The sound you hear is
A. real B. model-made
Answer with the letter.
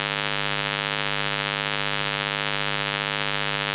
A